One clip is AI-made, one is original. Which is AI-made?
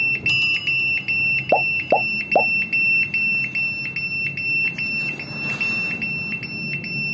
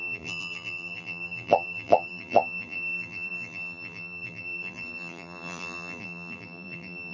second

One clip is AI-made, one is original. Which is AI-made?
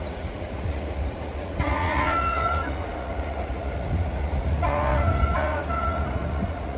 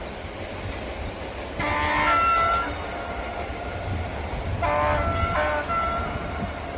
first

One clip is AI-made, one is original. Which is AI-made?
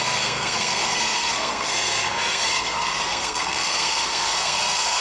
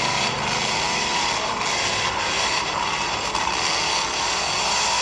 first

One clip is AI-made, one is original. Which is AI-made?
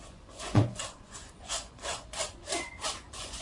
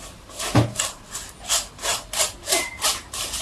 first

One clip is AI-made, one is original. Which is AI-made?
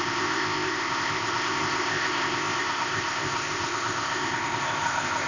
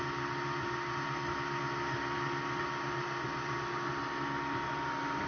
first